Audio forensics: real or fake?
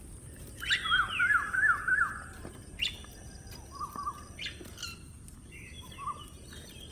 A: real